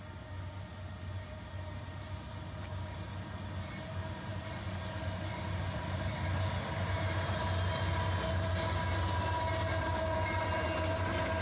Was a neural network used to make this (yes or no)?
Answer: no